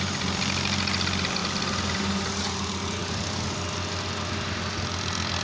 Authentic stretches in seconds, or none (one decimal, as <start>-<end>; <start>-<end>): 0.0-5.4